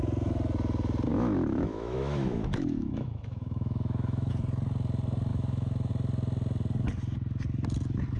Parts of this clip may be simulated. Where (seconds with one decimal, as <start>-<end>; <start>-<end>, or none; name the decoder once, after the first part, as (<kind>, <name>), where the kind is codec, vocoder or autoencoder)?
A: 1.1-4.3 (autoencoder, DAC-VAE); 5.3-5.9

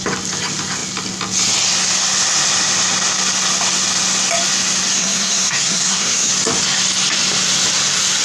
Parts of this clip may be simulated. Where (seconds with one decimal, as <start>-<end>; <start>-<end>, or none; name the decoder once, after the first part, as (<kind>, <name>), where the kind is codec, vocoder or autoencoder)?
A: 4.9-6.3 (codec, SNAC)

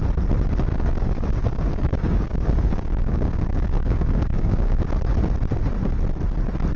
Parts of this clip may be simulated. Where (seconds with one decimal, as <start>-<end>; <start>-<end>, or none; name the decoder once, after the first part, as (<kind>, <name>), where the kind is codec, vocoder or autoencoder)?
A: 0.7-4.8 (codec, DAC)

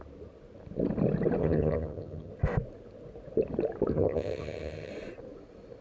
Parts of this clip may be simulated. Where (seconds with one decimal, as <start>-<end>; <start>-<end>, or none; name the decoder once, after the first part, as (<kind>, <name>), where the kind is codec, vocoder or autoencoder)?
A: 1.4-2.3 (vocoder, HiFi-GAN); 3.9-4.9

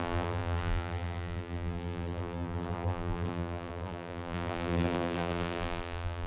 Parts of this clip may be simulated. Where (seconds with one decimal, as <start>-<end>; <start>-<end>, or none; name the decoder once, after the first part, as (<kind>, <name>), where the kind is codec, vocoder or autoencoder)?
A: 0.0-6.3 (vocoder, BigVGAN v2)

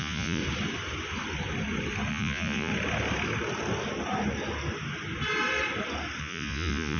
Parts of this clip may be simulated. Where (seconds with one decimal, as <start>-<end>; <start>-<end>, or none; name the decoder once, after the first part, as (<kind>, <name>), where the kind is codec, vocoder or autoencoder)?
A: 0.0-0.4 (vocoder, Vocos); 2.1-2.7; 6.2-7.0

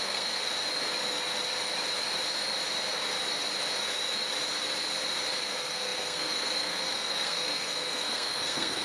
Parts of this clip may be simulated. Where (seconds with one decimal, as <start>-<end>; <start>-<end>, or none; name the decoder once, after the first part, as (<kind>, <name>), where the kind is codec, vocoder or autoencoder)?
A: 0.0-0.5 (codec, SNAC); 5.4-8.8

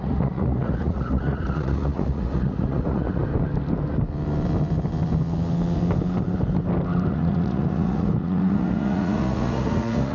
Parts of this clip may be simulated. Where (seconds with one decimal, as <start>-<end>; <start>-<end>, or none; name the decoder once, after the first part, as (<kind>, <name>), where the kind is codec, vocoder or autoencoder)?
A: 0.0-3.2 (vocoder, Vocos); 7.1-10.1